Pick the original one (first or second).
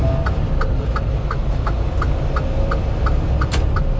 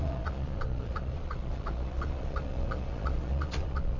first